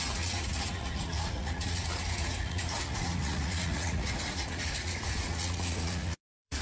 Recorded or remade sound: remade